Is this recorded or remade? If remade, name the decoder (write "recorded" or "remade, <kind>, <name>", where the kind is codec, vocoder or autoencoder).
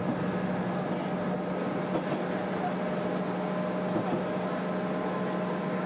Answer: recorded